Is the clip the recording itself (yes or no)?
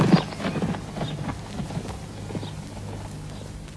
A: yes